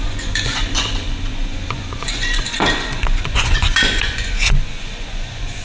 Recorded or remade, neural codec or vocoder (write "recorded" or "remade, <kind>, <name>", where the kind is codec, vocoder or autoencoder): remade, vocoder, Vocos